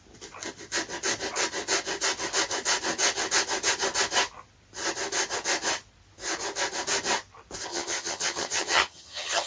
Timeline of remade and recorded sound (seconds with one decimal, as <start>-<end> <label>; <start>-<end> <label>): 0.0-7.7 recorded; 7.7-9.5 remade